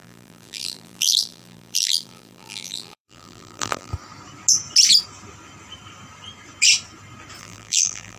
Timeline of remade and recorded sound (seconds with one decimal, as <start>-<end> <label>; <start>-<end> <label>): 0.0-3.9 remade; 3.9-7.4 recorded; 7.4-8.2 remade